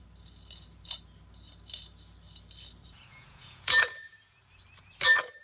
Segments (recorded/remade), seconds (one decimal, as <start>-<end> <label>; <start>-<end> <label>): 0.0-3.1 recorded; 3.1-4.4 remade; 4.4-5.4 recorded